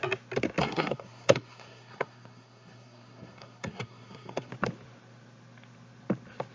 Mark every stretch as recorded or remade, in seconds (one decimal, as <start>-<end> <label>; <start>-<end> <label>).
0.0-0.6 recorded; 0.6-4.5 remade; 4.5-6.5 recorded